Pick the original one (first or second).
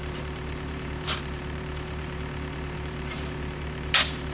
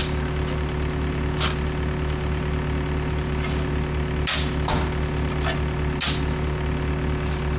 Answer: second